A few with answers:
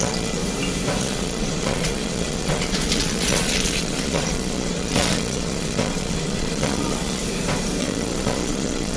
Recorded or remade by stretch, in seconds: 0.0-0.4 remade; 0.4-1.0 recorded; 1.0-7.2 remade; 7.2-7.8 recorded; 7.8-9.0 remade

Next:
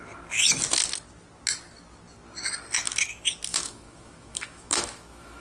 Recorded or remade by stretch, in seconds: 0.0-3.5 recorded; 3.5-5.4 remade

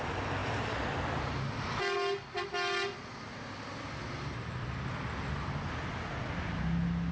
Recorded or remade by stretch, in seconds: 0.0-7.1 recorded